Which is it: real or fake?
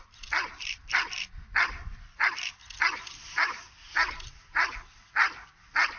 real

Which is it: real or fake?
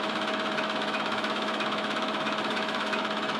fake